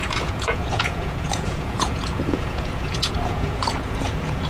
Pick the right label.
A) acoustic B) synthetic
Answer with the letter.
B